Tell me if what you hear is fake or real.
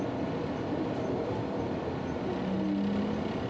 real